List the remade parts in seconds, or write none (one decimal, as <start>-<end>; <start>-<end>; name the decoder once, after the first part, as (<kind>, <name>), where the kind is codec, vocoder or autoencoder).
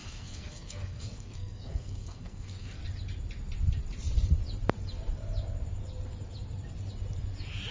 0.0-2.8 (codec, SNAC)